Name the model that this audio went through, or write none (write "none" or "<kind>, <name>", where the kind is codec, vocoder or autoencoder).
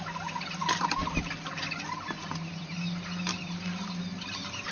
none